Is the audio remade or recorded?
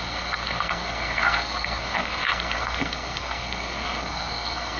remade